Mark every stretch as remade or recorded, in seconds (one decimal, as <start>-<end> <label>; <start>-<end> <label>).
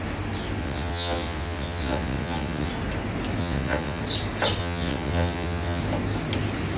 0.0-0.6 recorded; 0.6-2.7 remade; 2.7-3.4 recorded; 3.4-4.0 remade; 4.0-4.6 recorded; 4.6-5.8 remade; 5.8-6.8 recorded